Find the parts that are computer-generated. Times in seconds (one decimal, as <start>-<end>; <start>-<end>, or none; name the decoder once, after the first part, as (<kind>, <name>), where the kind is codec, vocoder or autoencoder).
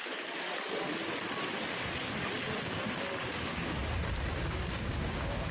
2.6-3.8 (codec, DAC); 4.3-5.5